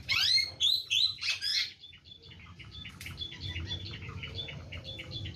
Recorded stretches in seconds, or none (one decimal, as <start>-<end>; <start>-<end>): 1.5-2.9